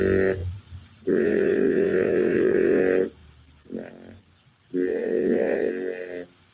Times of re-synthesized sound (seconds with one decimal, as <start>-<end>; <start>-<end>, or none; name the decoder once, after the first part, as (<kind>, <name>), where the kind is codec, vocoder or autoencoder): 0.4-2.8 (vocoder, Vocos); 4.9-5.7